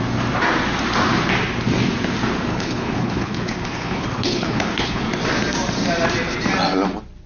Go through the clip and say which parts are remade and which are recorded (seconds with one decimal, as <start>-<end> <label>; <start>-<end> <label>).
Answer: 0.0-2.5 recorded; 2.5-5.0 remade; 5.0-7.3 recorded